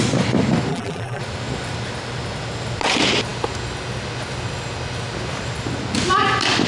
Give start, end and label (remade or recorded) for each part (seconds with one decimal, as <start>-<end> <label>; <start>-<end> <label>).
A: 0.0-0.7 recorded; 0.7-1.2 remade; 1.2-6.7 recorded